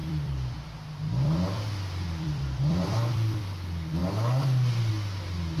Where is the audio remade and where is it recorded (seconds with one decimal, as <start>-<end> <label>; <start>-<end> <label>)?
0.0-3.4 remade; 3.4-5.6 recorded